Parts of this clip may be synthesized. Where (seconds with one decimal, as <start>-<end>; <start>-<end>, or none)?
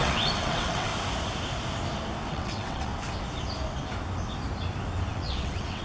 0.0-0.9; 2.3-2.9; 5.1-5.8